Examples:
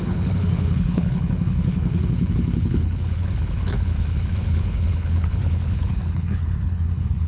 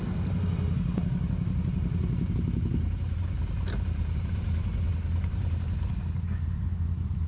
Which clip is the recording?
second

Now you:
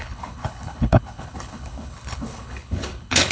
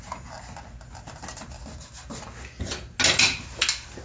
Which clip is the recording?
second